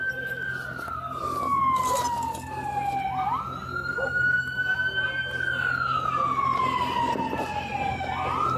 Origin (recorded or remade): recorded